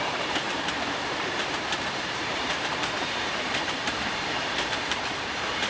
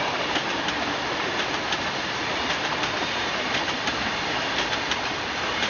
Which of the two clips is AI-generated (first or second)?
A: first